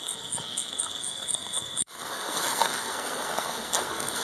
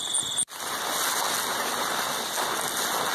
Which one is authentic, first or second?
second